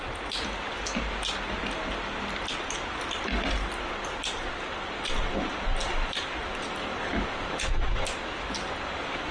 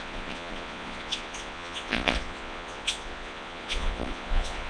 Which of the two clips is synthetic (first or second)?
second